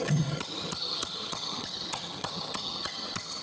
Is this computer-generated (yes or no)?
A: yes